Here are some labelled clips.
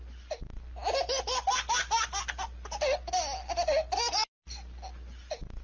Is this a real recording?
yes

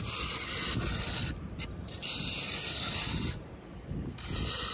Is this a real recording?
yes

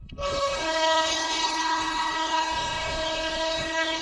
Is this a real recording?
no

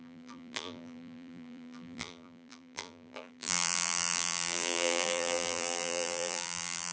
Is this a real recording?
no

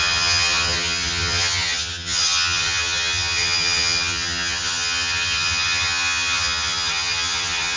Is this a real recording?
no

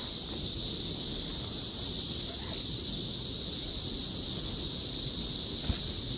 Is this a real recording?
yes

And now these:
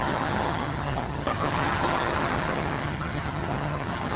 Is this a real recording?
no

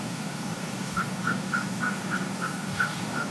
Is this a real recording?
no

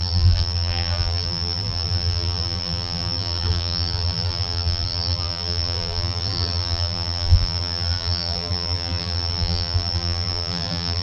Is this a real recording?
no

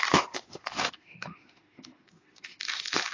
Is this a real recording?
no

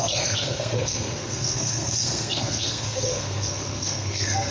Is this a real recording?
no